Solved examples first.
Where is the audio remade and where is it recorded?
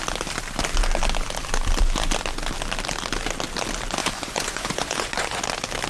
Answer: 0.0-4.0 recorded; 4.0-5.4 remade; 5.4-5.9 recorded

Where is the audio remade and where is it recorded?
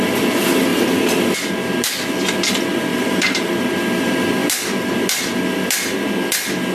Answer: 0.0-2.9 recorded; 2.9-3.5 remade; 3.5-6.7 recorded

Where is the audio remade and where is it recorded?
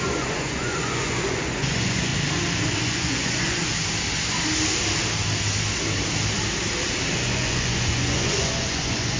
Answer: 0.0-2.1 remade; 2.1-2.8 recorded; 2.8-3.7 remade; 3.7-7.1 recorded; 7.1-9.2 remade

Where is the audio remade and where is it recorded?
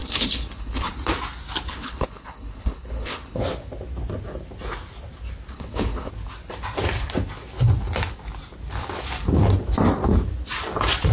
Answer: 0.0-0.9 remade; 0.9-1.7 recorded; 1.7-3.4 remade; 3.4-5.5 recorded; 5.5-6.1 remade; 6.1-11.1 recorded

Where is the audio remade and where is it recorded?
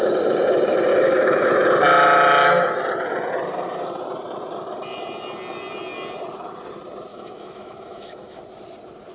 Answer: 0.0-0.9 recorded; 0.9-1.5 remade; 1.5-7.1 recorded; 7.1-8.4 remade; 8.4-9.1 recorded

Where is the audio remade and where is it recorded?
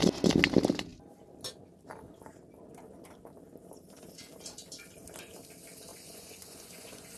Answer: 0.0-5.9 recorded; 5.9-7.2 remade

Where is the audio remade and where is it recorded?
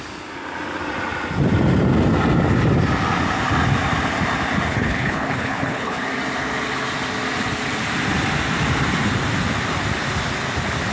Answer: 0.0-4.7 recorded; 4.7-6.0 remade; 6.0-10.9 recorded